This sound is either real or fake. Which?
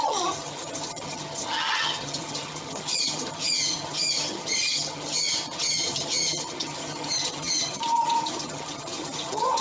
fake